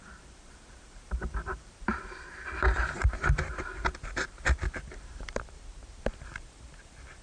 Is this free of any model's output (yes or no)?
no